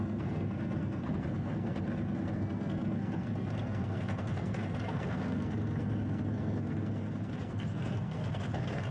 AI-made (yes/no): yes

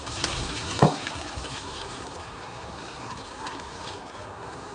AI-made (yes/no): yes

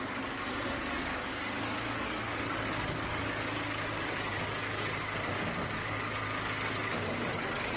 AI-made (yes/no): yes